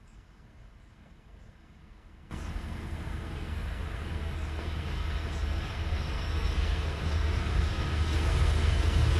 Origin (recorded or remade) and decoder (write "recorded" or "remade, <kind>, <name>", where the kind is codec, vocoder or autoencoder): remade, codec, SNAC